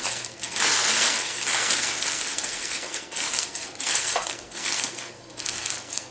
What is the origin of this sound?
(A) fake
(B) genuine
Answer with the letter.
A